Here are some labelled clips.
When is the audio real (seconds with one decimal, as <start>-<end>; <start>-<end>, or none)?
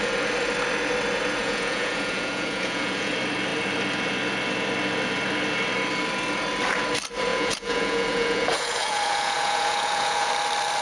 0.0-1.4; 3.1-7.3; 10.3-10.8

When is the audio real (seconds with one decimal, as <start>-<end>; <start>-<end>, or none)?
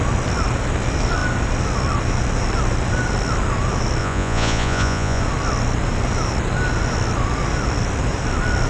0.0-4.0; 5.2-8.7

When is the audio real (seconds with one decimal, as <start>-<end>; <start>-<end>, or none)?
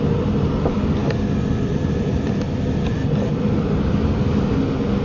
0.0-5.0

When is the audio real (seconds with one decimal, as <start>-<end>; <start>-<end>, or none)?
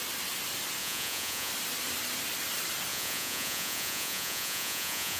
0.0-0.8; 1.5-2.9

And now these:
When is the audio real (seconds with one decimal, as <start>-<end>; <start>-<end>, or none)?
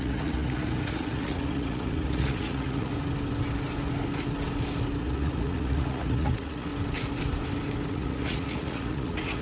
2.9-5.0; 6.7-7.9